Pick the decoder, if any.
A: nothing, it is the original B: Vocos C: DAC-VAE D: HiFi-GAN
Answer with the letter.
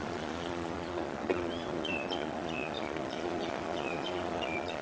B